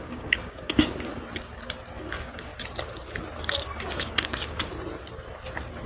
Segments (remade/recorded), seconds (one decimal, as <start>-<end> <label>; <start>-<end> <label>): 0.0-1.1 remade; 1.1-2.0 recorded; 2.0-2.5 remade; 2.5-3.9 recorded; 3.9-4.7 remade; 4.7-5.9 recorded